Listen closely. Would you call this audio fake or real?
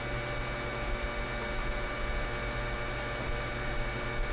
real